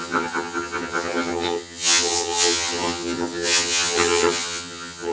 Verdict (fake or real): fake